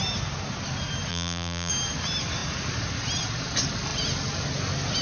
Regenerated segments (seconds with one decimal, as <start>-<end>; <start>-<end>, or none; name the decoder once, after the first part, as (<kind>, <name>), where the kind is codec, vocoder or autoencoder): 1.1-1.7 (vocoder, BigVGAN v2)